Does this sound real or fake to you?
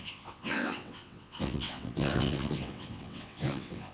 fake